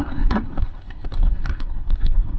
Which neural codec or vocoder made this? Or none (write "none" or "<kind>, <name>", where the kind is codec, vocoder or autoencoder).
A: codec, SNAC